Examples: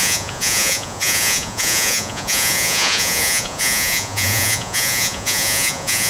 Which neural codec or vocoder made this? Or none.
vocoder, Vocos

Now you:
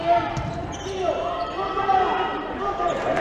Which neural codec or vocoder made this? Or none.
vocoder, BigVGAN v2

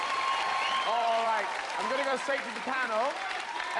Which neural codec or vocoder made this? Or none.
vocoder, BigVGAN v2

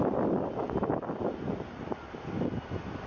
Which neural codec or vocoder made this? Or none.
none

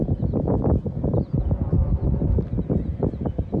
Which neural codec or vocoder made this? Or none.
none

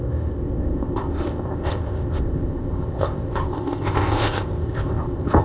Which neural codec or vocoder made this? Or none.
codec, ZipCodec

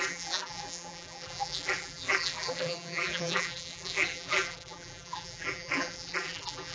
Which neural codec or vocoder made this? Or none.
vocoder, BigVGAN v2